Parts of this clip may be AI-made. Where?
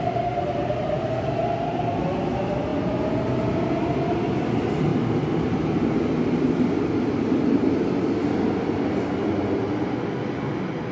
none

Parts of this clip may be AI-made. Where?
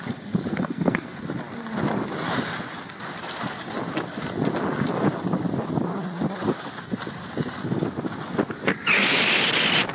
0.5-1.2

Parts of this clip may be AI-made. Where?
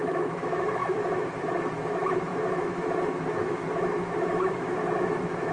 0.0-5.5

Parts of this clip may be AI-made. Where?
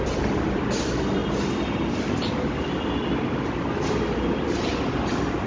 none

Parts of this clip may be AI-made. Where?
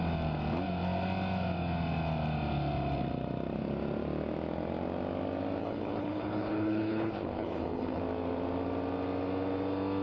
5.6-8.0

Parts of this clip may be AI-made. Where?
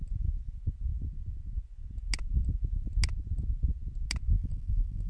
4.3-5.1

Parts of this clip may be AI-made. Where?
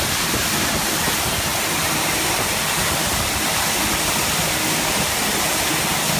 0.4-1.0; 1.5-2.4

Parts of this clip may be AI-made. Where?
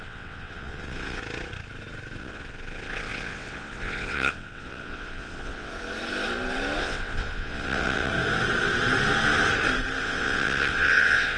0.0-1.2; 2.2-5.7; 6.8-8.1; 10.0-11.4